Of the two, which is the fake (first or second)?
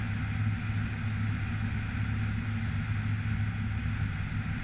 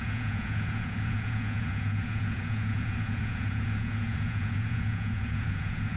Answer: second